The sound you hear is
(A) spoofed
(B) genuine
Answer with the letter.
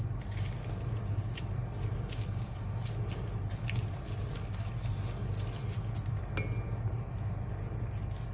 B